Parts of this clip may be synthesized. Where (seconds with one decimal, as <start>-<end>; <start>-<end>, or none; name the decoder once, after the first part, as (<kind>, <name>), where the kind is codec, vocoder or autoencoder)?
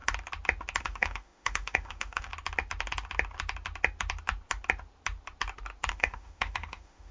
0.8-2.3 (autoencoder, DAC-VAE); 5.9-7.1